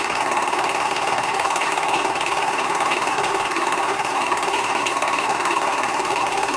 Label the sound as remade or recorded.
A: remade